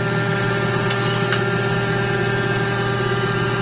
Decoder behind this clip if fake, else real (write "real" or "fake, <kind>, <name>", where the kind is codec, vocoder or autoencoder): real